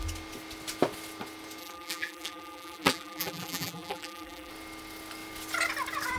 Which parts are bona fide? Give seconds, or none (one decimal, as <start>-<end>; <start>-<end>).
0.0-1.6; 4.5-6.2